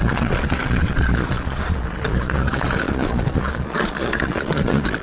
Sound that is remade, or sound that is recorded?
remade